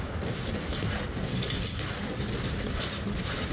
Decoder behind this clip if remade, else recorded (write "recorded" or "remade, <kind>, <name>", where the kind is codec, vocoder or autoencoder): recorded